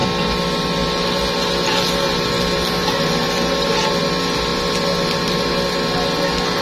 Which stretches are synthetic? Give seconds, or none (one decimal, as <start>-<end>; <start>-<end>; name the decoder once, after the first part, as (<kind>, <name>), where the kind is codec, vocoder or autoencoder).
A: none